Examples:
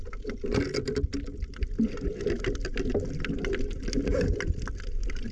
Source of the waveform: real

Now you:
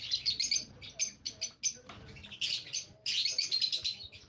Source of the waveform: real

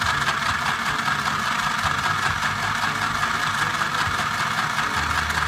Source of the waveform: real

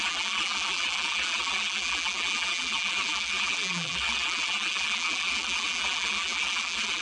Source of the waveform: fake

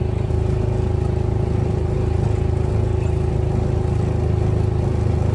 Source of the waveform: real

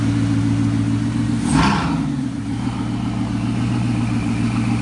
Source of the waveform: real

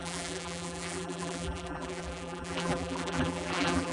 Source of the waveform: fake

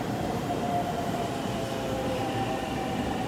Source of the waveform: fake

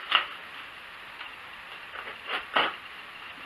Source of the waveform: real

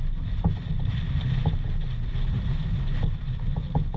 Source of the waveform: real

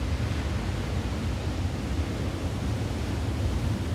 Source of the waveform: real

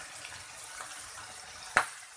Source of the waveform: real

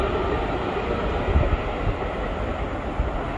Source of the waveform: real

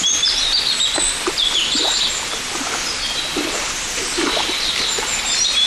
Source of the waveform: fake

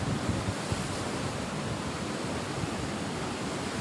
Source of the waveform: real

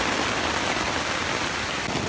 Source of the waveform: real